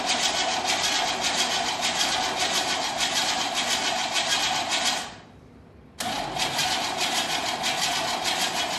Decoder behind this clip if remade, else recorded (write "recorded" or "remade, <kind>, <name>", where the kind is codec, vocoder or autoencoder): recorded